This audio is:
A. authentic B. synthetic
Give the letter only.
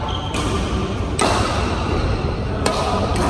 A